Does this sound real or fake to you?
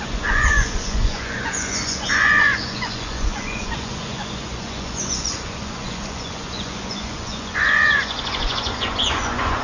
fake